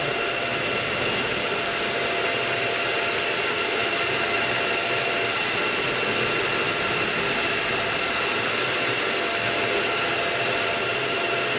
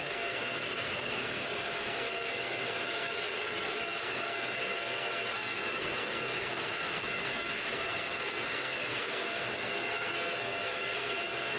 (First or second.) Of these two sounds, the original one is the first